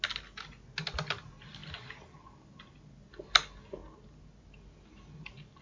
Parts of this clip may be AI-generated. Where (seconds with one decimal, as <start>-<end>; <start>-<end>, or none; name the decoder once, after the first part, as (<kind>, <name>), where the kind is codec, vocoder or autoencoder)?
none